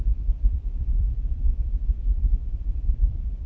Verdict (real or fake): fake